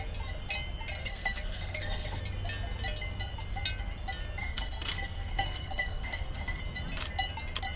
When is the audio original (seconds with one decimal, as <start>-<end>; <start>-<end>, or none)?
0.0-1.0; 2.2-4.4; 6.6-7.8